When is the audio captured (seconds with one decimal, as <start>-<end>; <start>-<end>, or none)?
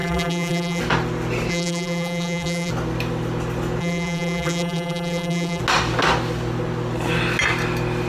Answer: 0.8-1.5; 2.7-3.8; 5.6-8.1